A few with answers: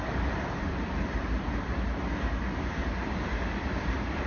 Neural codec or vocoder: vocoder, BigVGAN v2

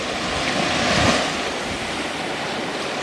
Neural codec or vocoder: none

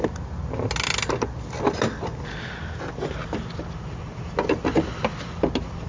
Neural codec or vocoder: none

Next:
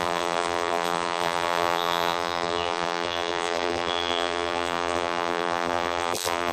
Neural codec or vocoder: vocoder, BigVGAN v2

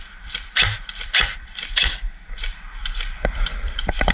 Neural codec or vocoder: vocoder, BigVGAN v2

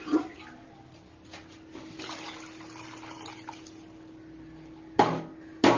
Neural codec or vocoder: none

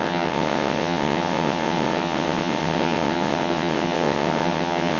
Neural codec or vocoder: vocoder, WaveNeXt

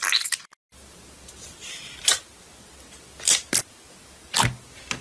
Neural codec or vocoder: none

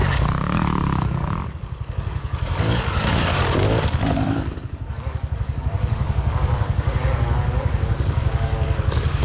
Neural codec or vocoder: codec, DAC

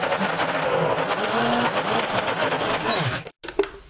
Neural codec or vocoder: none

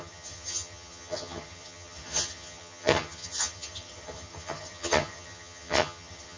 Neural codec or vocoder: vocoder, HiFi-GAN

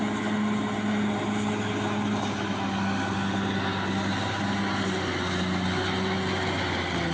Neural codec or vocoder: none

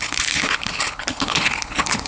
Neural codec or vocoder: codec, HILCodec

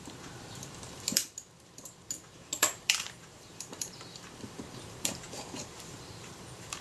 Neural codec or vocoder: vocoder, BigVGAN v2